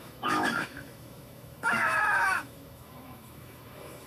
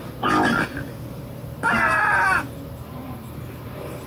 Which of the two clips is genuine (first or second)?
second